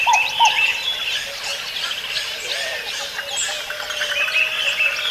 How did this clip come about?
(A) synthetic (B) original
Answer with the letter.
B